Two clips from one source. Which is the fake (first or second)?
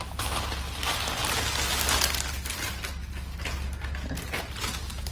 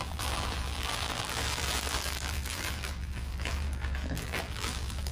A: second